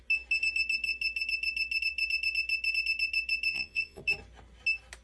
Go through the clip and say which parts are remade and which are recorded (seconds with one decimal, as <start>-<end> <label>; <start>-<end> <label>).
0.0-3.5 recorded; 3.5-4.0 remade; 4.0-5.0 recorded